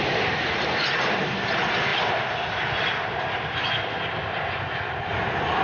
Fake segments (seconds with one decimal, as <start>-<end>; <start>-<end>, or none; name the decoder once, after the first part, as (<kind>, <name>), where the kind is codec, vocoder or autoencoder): 0.0-1.9 (vocoder, BigVGAN v2)